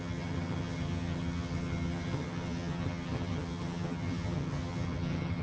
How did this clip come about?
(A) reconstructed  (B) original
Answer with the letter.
A